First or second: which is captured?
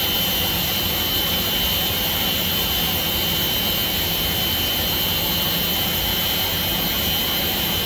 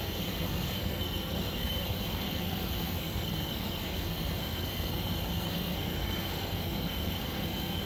first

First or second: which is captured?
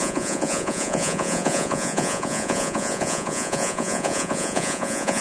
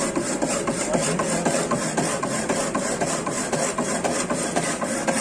second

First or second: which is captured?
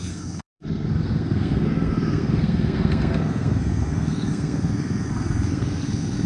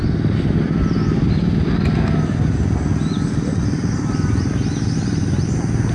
second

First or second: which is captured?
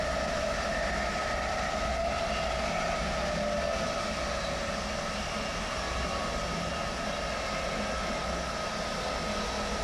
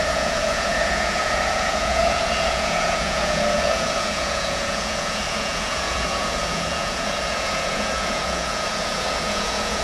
first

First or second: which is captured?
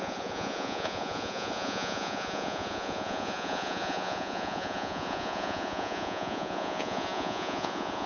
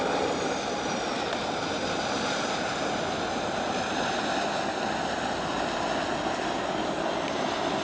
second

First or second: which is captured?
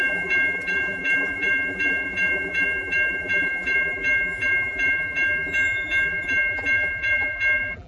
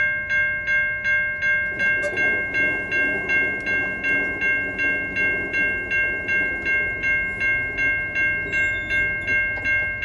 second